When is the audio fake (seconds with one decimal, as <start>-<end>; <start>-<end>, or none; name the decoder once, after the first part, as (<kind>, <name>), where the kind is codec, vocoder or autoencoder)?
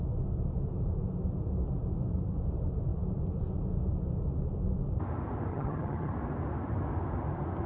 5.5-6.1 (vocoder, HiFi-GAN)